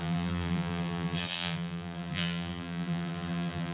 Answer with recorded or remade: remade